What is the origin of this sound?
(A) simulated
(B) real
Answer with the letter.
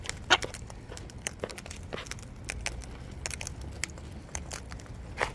B